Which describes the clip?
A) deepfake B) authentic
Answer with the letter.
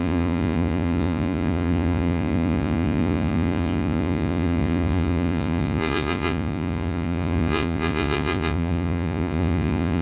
A